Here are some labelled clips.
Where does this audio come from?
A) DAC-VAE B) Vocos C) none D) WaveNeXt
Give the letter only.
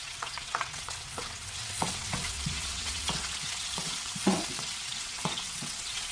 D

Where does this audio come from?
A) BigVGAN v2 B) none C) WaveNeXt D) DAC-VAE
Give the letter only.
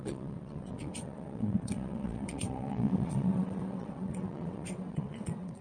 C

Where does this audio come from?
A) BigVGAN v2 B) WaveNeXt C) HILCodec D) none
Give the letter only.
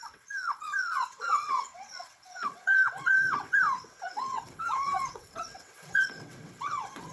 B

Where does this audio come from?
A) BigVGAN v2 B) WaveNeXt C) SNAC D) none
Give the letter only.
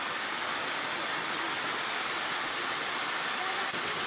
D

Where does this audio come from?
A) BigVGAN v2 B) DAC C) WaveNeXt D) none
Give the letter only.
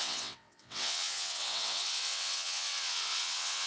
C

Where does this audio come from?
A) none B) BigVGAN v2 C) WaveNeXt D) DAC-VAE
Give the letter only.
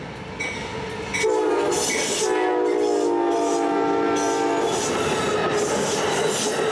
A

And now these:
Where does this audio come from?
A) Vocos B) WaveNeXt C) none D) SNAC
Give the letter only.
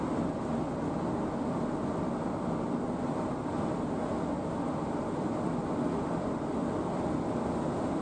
C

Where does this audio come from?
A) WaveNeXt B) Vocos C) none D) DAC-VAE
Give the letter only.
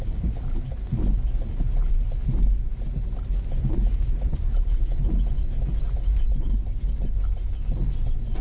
C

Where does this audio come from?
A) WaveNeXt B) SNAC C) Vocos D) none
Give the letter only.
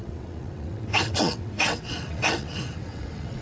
A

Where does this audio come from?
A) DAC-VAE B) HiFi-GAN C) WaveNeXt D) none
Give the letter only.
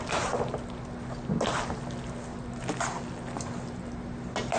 D